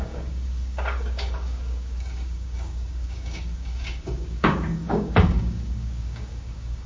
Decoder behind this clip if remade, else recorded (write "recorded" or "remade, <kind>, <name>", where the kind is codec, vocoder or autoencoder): remade, codec, DAC